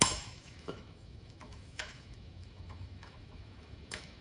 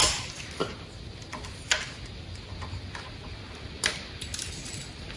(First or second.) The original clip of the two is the second